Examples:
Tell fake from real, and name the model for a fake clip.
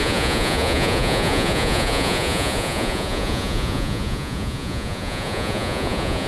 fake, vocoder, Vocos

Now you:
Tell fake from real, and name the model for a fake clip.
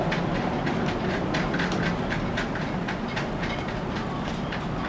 real